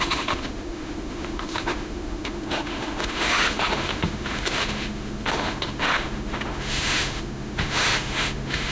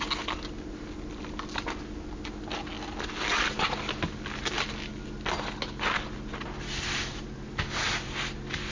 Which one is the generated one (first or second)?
first